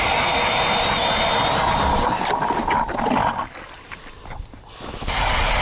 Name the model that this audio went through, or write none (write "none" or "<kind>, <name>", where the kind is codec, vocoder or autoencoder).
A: none